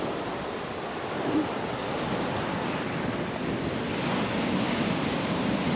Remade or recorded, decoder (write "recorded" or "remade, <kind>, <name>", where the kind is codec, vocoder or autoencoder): recorded